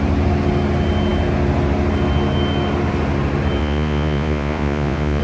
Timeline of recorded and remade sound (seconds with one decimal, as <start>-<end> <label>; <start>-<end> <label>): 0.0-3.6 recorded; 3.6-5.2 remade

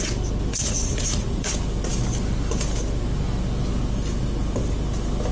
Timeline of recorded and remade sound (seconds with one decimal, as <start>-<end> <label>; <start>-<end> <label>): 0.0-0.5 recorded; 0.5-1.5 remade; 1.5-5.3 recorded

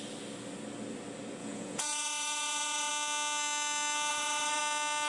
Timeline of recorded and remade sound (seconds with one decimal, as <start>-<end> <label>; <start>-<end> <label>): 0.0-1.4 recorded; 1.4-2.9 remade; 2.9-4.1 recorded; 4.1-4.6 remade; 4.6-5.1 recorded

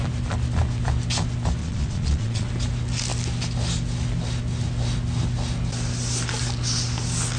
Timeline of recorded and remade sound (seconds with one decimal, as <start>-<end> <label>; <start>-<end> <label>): 0.0-1.6 recorded; 1.6-2.5 remade; 2.5-7.4 recorded

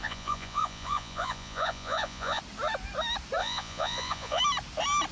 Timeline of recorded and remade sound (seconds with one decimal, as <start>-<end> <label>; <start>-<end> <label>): 0.0-2.4 remade; 2.4-3.4 recorded; 3.4-4.4 remade; 4.4-5.1 recorded

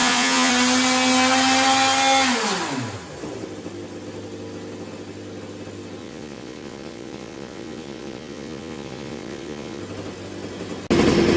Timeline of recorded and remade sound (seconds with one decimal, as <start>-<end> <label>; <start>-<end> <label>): 0.0-0.5 remade; 0.5-6.0 recorded; 6.0-9.8 remade; 9.8-11.4 recorded